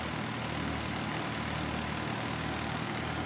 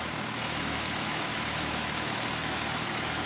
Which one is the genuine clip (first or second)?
first